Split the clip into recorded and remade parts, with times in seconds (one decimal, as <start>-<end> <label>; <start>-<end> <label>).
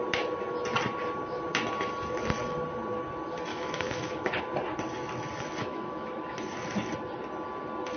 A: 0.0-3.5 recorded; 3.5-4.4 remade; 4.4-5.6 recorded; 5.6-6.2 remade; 6.2-8.0 recorded